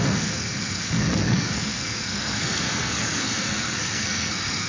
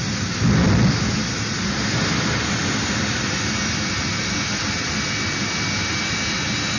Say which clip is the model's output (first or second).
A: first